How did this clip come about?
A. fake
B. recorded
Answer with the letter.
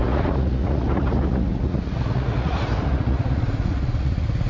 A